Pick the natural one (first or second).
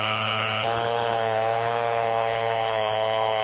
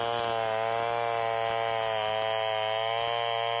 second